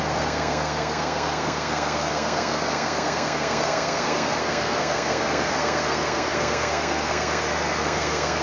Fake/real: fake